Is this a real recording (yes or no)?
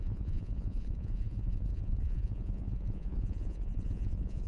no